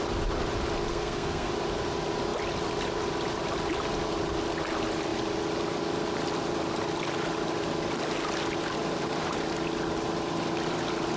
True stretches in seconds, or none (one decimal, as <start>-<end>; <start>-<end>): 0.0-0.9; 1.5-11.2

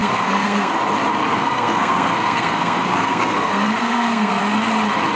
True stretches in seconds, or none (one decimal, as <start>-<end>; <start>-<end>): 0.7-1.3; 4.4-5.2

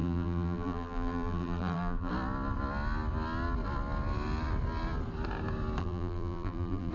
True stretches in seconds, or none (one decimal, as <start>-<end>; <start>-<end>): 2.1-5.8

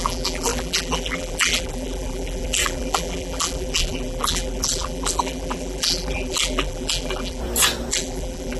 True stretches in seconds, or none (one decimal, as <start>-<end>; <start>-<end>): 7.4-7.9

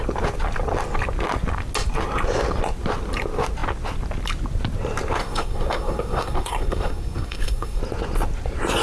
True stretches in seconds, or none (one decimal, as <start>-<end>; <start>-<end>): 0.0-5.2; 7.8-8.8

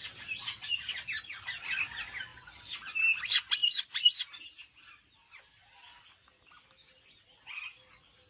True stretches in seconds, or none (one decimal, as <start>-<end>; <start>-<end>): 0.0-8.3

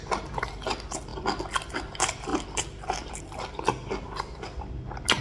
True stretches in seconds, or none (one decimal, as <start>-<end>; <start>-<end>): 0.0-1.1; 1.7-2.3; 3.2-5.2

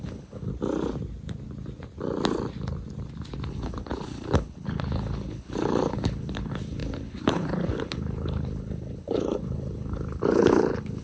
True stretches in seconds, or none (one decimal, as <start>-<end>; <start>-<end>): 0.5-3.5